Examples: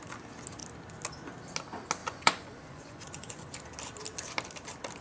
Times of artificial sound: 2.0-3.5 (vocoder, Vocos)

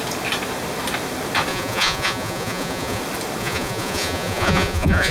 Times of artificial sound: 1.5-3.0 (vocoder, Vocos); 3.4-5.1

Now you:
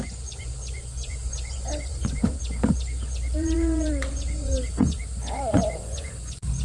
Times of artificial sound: 0.0-6.6 (vocoder, Vocos)

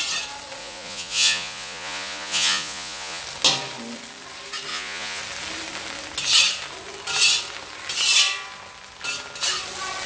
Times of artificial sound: 0.6-3.2 (vocoder, Vocos); 4.7-5.2